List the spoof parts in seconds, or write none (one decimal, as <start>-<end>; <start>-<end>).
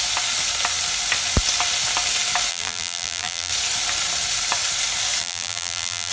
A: 2.5-3.5; 5.2-6.1